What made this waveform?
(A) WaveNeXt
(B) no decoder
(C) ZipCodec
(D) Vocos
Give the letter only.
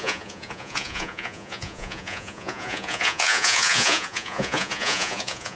D